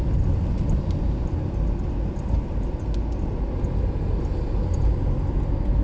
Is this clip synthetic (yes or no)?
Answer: no